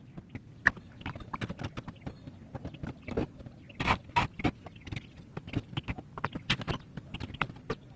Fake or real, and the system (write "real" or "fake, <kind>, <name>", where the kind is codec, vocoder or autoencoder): real